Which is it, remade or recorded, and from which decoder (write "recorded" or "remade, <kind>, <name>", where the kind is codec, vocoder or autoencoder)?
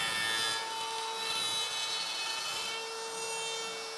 recorded